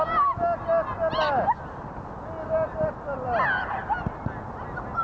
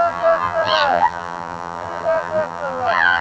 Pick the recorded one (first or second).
first